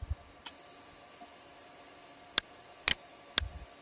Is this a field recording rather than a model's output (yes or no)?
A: yes